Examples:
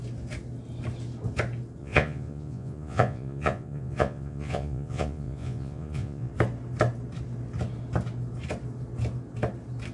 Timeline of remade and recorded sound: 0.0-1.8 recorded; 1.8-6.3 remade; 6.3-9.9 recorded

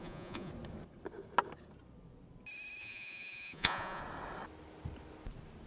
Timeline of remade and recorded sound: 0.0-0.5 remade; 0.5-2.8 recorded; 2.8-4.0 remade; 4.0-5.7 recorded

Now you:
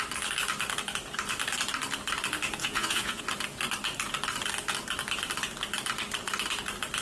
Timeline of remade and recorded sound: 0.0-2.6 recorded; 2.6-3.2 remade; 3.2-7.0 recorded

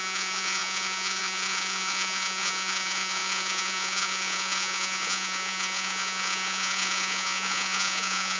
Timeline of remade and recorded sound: 0.0-8.4 remade

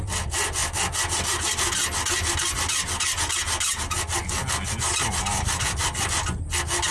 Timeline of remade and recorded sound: 0.0-6.9 recorded

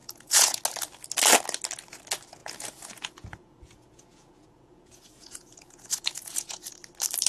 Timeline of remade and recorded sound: 0.0-0.6 remade; 0.6-2.4 recorded; 2.4-6.7 remade; 6.7-7.3 recorded

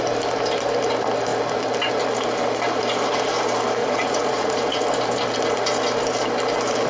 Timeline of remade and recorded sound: 0.0-3.8 recorded; 3.8-4.8 remade; 4.8-6.9 recorded